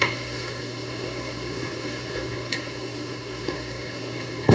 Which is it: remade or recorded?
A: remade